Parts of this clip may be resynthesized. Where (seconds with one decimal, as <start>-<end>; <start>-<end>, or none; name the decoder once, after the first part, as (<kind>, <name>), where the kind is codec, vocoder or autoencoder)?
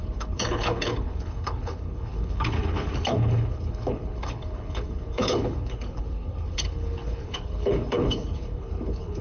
0.0-9.2 (codec, HILCodec)